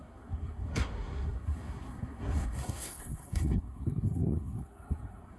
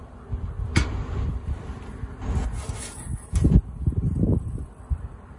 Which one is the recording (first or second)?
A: second